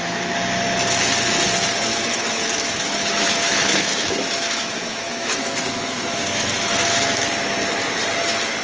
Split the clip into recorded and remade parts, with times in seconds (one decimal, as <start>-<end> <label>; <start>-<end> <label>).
0.0-1.9 recorded; 1.9-7.0 remade; 7.0-8.6 recorded